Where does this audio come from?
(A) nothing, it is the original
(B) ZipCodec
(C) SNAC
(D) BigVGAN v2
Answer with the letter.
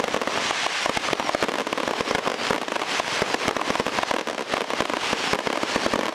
A